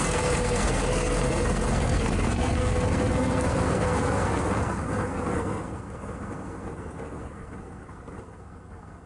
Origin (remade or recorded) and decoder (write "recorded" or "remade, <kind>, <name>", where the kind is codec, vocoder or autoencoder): remade, codec, SNAC